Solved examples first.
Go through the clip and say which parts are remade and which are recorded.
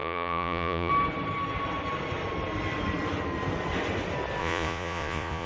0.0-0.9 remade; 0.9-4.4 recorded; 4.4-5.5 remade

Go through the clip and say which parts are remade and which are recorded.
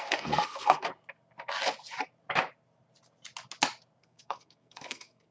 0.0-0.9 remade; 0.9-4.0 recorded; 4.0-5.3 remade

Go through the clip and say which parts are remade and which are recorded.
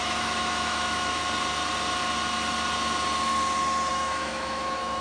0.0-1.2 remade; 1.2-3.9 recorded; 3.9-5.0 remade